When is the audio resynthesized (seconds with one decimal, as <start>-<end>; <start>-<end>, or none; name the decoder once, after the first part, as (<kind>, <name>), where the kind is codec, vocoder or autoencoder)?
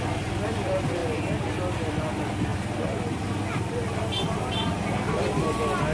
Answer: none